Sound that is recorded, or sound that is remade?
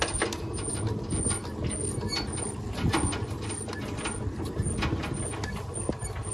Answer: recorded